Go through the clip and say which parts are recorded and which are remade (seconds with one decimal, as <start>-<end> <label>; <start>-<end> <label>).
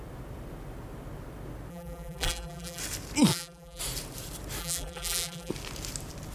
0.0-1.7 recorded; 1.7-2.8 remade; 2.8-3.3 recorded; 3.3-3.8 remade; 3.8-4.6 recorded; 4.6-5.5 remade; 5.5-6.3 recorded